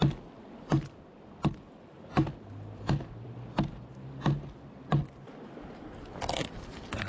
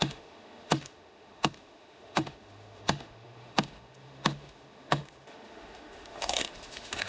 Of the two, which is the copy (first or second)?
second